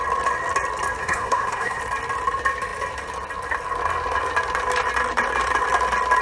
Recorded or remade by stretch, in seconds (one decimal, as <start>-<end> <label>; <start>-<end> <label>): 0.0-1.0 recorded; 1.0-1.8 remade; 1.8-6.2 recorded